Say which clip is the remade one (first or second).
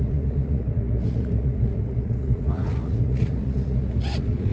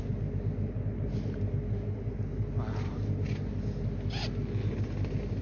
first